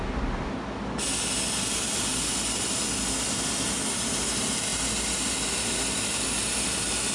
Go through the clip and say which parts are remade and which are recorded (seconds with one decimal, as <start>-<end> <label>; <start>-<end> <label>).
0.0-7.1 recorded